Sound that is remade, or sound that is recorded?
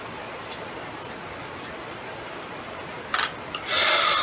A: recorded